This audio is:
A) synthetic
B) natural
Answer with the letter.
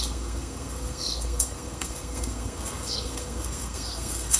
A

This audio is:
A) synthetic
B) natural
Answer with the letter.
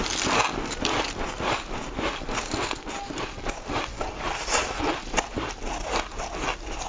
B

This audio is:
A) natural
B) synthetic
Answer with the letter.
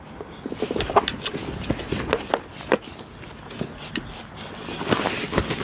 A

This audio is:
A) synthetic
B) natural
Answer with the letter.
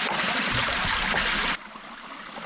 B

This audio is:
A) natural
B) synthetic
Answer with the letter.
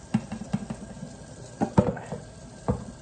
A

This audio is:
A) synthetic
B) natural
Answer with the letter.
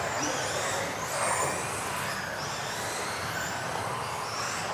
B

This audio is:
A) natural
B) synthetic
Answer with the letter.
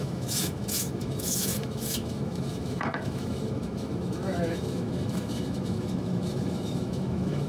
B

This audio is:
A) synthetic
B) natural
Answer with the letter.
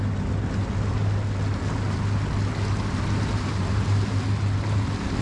B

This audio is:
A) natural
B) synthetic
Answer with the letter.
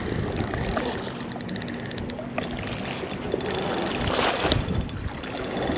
A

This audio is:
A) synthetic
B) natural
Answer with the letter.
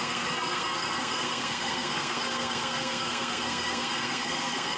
A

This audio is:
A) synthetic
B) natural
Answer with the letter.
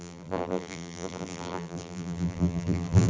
A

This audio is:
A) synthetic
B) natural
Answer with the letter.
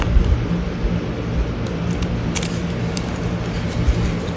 B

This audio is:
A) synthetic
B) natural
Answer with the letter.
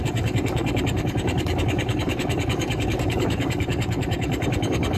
A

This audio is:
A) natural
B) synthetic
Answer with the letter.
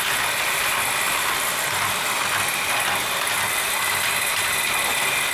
A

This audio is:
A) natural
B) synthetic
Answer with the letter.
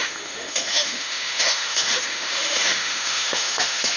B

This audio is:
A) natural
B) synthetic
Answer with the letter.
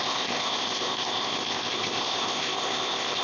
B